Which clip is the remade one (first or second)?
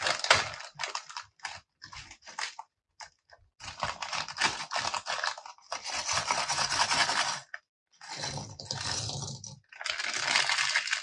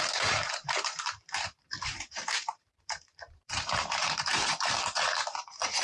second